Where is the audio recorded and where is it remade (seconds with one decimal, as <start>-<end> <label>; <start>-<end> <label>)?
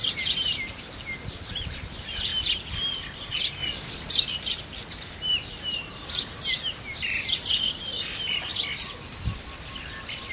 0.0-2.3 remade; 2.3-3.0 recorded; 3.0-3.6 remade; 3.6-4.1 recorded; 4.1-8.5 remade; 8.5-10.3 recorded